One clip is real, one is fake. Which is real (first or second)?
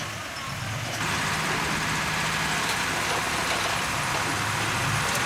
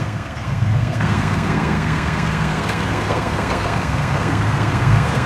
first